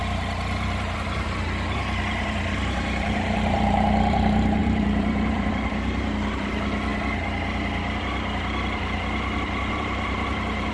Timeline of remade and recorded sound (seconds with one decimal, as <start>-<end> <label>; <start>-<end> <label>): 0.0-6.9 remade; 6.9-9.7 recorded; 9.7-10.7 remade